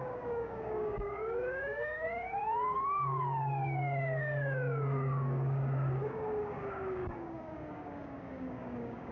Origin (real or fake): fake